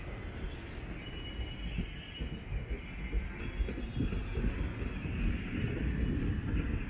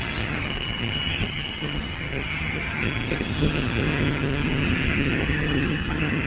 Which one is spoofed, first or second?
second